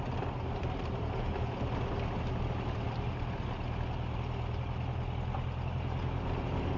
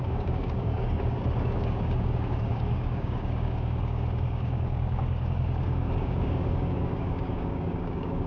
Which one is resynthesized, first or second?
second